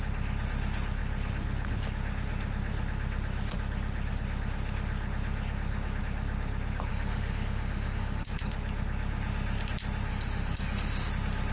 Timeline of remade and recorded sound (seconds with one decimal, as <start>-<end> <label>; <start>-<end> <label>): 0.0-6.9 recorded; 6.9-8.5 remade; 8.5-10.1 recorded; 10.1-11.1 remade; 11.1-11.5 recorded